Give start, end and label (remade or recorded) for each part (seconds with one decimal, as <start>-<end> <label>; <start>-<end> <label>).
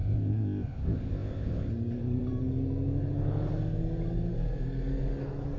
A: 0.0-1.7 remade; 1.7-5.6 recorded